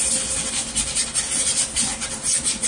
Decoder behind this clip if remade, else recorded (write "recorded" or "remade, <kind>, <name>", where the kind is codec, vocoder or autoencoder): recorded